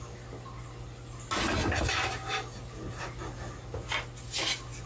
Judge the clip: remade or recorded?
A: recorded